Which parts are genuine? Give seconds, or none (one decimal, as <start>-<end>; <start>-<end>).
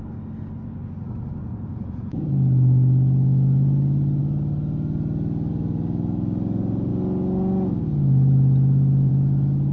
0.0-1.4; 2.3-9.7